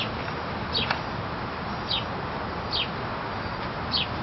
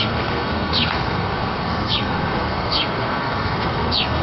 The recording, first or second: first